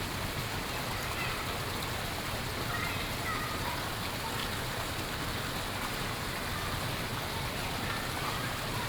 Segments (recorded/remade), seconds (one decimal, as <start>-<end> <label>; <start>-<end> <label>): 0.0-8.9 recorded